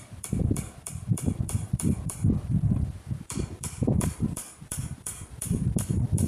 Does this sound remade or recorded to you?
remade